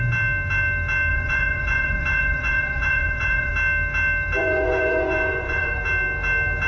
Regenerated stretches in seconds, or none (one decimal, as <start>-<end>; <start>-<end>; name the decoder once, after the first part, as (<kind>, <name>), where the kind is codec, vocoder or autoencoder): 1.1-3.5 (vocoder, Vocos); 4.4-5.8